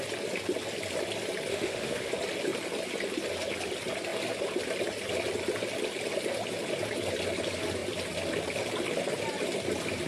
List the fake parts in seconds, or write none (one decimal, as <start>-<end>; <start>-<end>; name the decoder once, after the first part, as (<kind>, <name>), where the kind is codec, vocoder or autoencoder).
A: 1.5-2.1 (autoencoder, DAC-VAE)